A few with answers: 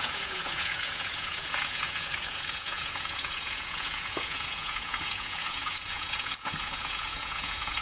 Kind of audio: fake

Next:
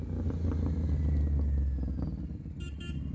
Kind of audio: real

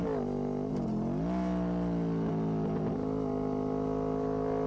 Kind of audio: real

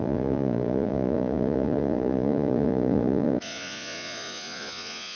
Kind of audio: fake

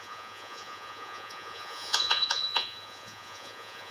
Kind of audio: fake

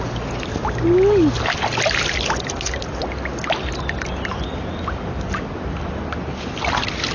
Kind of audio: real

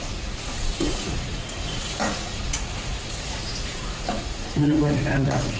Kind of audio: fake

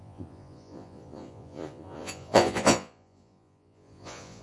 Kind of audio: fake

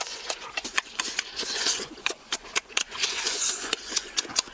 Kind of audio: fake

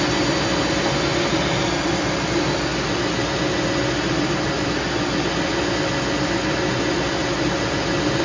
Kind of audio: real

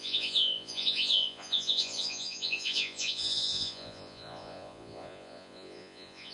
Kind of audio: fake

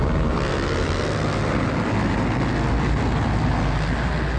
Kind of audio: real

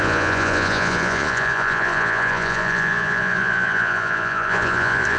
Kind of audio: fake